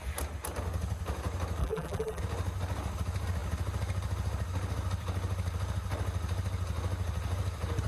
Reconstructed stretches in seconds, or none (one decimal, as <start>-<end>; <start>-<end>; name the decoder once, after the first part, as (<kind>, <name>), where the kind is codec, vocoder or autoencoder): 1.6-2.2 (vocoder, BigVGAN v2)